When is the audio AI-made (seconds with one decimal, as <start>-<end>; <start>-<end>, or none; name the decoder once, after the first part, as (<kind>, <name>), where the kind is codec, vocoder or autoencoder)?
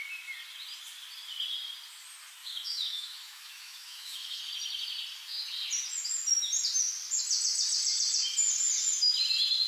2.4-4.4 (autoencoder, DAC-VAE)